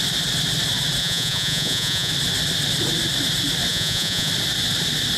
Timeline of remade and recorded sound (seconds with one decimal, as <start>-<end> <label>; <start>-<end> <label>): 0.0-1.0 recorded; 1.0-2.1 remade; 2.1-3.7 recorded; 3.7-4.3 remade; 4.3-5.2 recorded